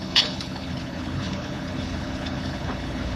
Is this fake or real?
fake